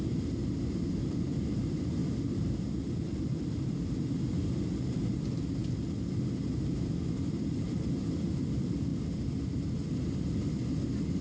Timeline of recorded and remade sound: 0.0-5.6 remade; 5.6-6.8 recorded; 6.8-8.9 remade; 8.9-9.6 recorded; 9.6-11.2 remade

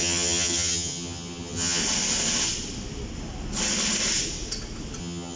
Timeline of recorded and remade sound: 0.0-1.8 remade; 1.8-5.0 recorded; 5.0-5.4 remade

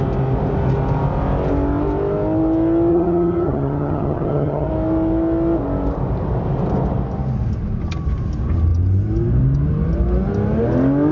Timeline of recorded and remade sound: 0.0-2.9 recorded; 2.9-4.7 remade; 4.7-11.1 recorded